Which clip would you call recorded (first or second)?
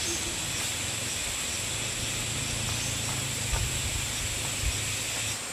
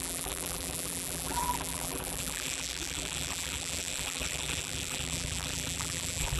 first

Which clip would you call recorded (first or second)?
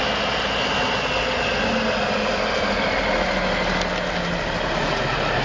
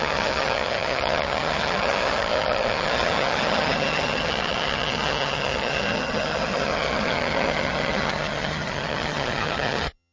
first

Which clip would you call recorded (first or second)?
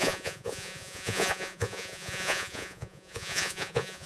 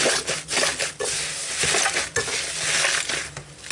second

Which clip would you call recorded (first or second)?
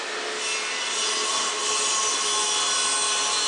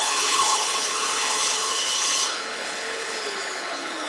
first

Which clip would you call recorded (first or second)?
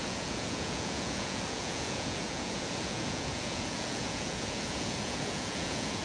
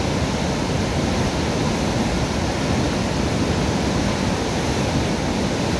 second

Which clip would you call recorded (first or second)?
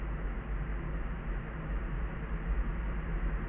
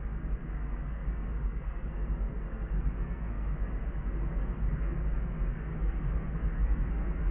first